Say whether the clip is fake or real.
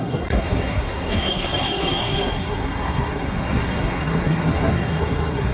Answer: fake